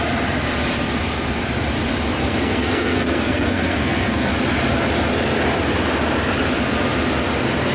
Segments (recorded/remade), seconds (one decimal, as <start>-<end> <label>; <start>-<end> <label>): 0.0-2.2 recorded; 2.2-4.3 remade; 4.3-7.7 recorded